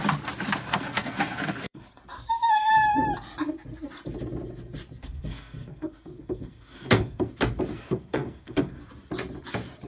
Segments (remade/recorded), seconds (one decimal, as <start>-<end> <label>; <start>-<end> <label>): 0.0-0.6 recorded; 0.6-1.9 remade; 1.9-5.0 recorded; 5.0-7.3 remade; 7.3-7.7 recorded; 7.7-8.8 remade; 8.8-9.9 recorded